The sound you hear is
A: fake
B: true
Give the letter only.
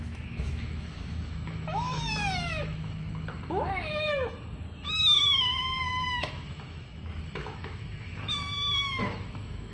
A